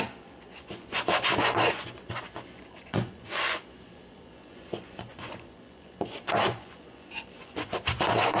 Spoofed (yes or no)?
yes